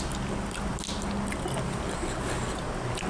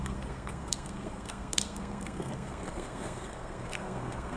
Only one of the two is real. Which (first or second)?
first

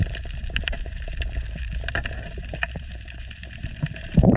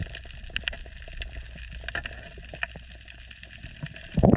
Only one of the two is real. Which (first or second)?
second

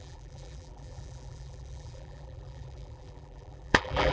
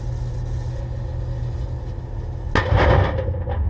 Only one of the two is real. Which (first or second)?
second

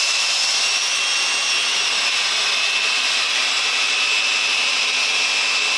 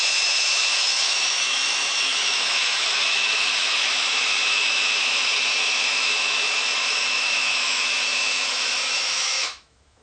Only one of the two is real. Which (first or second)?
first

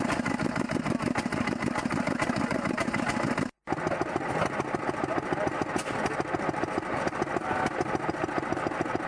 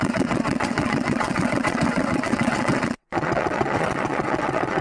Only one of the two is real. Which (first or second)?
first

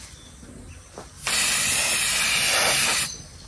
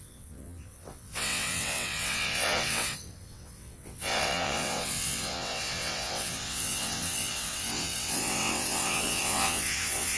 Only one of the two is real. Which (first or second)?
first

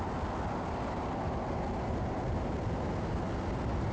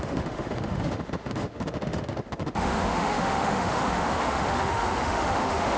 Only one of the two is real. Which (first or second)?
first